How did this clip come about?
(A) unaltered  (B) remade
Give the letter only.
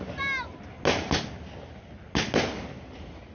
A